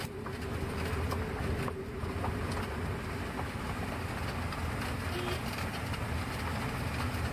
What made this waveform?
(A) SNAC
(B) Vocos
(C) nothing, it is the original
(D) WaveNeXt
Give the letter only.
C